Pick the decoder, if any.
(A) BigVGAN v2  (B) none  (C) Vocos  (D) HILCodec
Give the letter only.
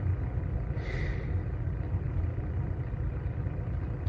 B